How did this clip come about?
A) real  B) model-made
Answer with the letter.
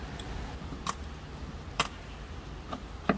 A